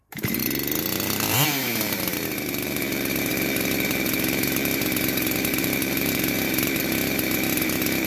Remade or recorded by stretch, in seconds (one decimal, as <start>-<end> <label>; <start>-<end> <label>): 0.0-0.4 remade; 0.4-1.3 recorded; 1.3-8.1 remade